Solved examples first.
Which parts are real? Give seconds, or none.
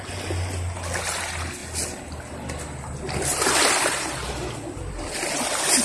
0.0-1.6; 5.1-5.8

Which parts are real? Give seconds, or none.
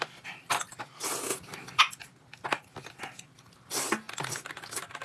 0.0-5.0